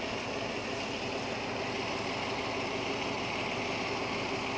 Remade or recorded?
recorded